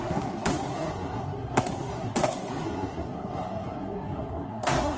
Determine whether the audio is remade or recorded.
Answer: remade